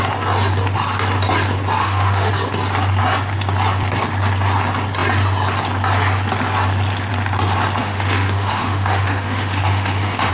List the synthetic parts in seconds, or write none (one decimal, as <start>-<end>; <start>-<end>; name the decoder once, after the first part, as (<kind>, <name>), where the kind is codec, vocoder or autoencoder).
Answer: 1.8-2.3 (autoencoder, DAC-VAE); 7.8-10.3